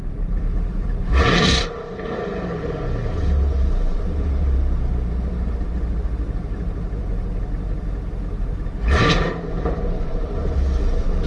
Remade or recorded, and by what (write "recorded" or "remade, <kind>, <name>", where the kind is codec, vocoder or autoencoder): remade, vocoder, BigVGAN v2